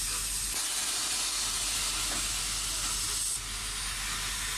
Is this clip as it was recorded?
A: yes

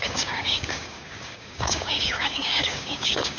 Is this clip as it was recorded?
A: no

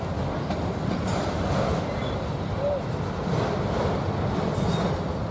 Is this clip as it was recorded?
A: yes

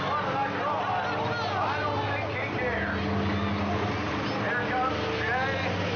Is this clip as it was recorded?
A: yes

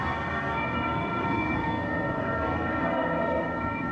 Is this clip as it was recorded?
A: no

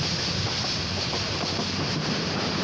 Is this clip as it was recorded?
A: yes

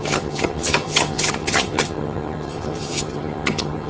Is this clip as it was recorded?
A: no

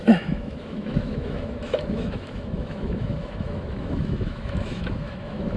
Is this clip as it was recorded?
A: no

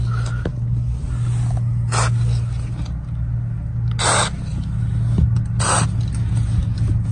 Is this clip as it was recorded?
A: yes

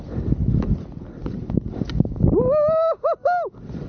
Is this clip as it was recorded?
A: yes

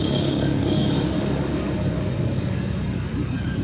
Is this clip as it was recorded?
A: no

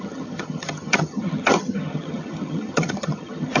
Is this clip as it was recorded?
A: no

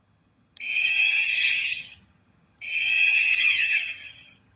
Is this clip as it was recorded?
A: no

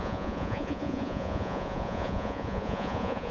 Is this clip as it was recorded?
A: no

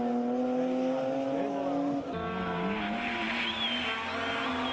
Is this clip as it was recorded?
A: yes